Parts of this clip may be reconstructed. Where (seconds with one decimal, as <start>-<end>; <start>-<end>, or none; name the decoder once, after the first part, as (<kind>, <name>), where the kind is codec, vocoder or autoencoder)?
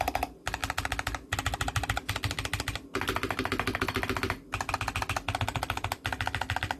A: none